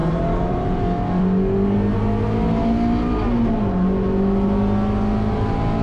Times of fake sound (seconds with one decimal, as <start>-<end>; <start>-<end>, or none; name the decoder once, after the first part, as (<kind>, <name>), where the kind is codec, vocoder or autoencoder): none